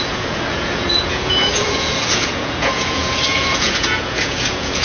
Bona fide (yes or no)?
no